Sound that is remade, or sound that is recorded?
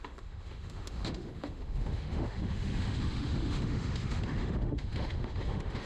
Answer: remade